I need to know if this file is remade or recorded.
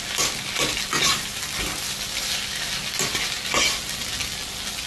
recorded